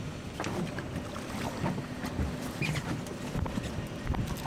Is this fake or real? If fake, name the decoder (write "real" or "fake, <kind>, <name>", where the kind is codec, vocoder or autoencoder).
real